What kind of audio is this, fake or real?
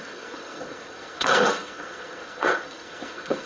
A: fake